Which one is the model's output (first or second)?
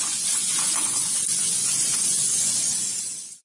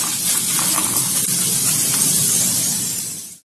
first